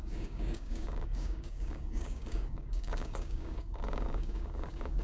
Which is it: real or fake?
fake